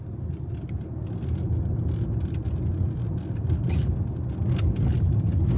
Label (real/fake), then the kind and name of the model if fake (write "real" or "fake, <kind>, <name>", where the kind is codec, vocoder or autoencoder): real